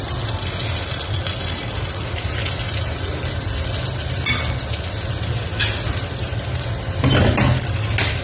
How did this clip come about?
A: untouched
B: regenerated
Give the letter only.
A